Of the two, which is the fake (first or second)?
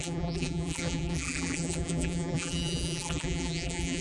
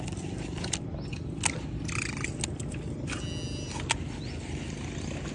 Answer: first